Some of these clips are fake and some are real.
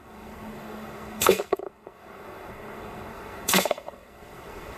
fake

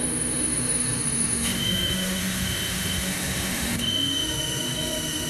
fake